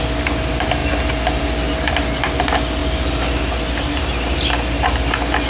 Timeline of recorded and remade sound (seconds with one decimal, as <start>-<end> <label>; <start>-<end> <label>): 0.0-5.5 recorded